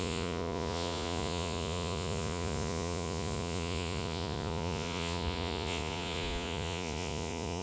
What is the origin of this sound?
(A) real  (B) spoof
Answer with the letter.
B